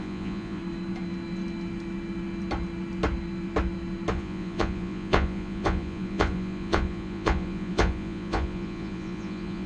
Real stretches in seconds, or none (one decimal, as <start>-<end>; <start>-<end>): 0.6-4.1